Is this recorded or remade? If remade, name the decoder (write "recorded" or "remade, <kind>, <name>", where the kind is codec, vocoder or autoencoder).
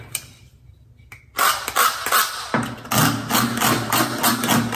recorded